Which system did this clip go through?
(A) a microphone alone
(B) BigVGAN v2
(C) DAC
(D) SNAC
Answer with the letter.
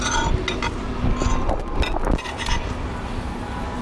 A